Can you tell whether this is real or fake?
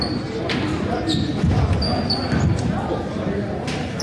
real